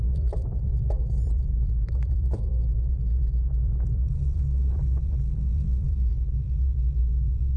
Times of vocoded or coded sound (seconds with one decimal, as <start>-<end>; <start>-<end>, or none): 0.0-2.5; 3.6-6.1; 7.0-7.6